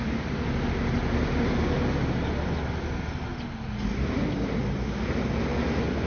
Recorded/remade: recorded